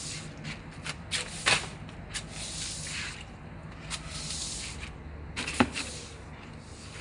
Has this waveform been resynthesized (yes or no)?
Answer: no